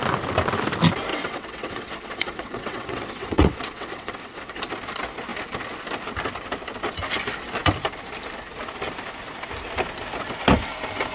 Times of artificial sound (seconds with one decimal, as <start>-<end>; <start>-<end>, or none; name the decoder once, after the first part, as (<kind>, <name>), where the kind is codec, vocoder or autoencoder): 1.1-4.6 (vocoder, WaveNeXt)